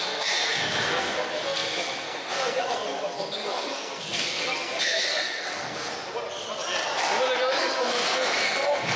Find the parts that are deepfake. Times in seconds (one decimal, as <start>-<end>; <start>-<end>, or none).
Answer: 0.0-5.9; 7.5-9.0